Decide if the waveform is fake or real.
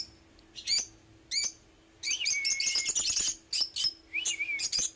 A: real